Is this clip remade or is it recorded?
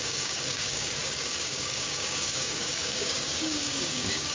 remade